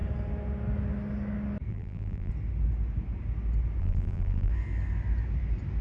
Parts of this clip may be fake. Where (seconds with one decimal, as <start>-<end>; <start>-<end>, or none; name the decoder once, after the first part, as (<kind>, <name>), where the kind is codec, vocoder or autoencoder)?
1.7-2.3 (vocoder, BigVGAN v2); 3.8-4.5